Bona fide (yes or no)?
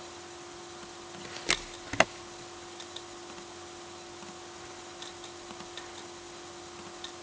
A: yes